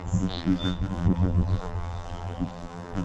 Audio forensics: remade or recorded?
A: remade